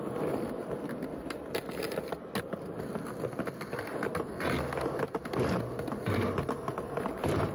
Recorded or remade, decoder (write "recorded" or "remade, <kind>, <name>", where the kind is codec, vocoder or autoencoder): recorded